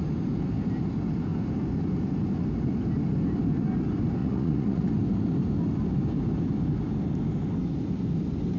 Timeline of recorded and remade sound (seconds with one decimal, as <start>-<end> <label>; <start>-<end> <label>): 0.0-4.2 recorded; 4.2-4.9 remade; 4.9-8.6 recorded